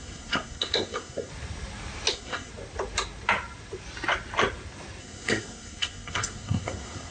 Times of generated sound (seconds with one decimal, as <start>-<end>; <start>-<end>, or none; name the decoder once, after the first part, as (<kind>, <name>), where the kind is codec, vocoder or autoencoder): 0.0-1.3 (codec, SNAC); 2.1-2.5; 5.0-7.1